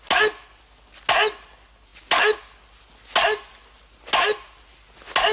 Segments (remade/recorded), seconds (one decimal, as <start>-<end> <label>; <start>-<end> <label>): 0.0-5.3 recorded